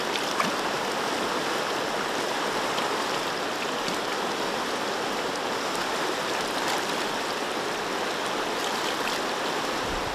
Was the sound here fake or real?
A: real